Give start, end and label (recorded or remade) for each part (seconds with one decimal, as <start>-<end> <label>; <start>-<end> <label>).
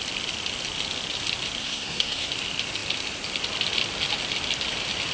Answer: 0.0-1.6 recorded; 1.6-2.3 remade; 2.3-5.1 recorded